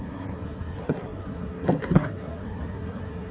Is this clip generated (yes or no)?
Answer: yes